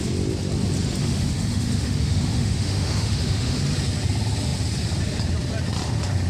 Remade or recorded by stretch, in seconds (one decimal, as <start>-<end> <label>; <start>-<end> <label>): 0.0-1.0 recorded; 1.0-3.6 remade; 3.6-6.3 recorded